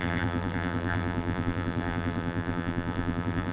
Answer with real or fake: fake